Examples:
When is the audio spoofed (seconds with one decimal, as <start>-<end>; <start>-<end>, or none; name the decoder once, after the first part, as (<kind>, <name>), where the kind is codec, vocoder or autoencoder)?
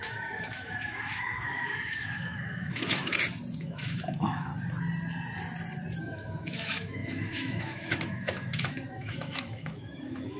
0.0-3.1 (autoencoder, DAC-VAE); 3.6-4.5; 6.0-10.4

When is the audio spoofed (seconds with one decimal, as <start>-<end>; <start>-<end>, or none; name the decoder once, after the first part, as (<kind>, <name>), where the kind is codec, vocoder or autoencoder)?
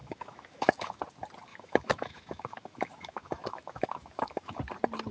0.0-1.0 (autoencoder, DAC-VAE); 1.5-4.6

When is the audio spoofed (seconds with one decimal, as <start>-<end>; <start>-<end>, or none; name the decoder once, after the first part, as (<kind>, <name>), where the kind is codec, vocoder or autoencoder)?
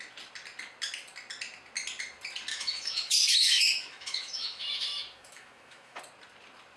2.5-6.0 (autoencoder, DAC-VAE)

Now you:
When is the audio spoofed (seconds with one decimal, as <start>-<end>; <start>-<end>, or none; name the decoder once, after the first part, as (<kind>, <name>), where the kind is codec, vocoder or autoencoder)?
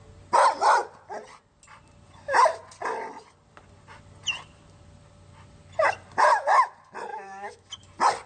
7.1-7.7 (autoencoder, DAC-VAE)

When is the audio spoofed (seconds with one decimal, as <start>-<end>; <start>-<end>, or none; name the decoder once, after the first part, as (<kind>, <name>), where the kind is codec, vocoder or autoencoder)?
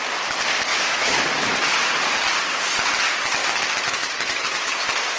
0.7-1.5 (autoencoder, DAC-VAE); 3.4-4.7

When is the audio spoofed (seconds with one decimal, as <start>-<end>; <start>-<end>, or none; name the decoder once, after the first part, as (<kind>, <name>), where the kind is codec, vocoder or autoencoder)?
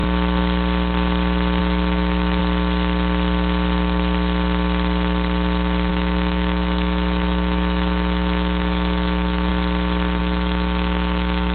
1.6-2.4 (autoencoder, DAC-VAE); 5.9-9.5; 10.2-11.5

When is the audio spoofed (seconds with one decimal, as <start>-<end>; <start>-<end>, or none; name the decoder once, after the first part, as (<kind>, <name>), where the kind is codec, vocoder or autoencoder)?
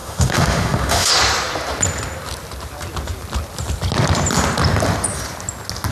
0.0-1.1 (autoencoder, DAC-VAE)